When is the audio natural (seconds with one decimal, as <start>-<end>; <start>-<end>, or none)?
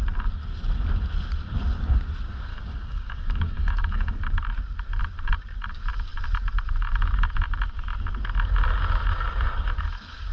0.0-2.5; 4.2-10.3